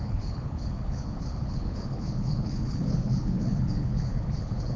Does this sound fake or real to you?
fake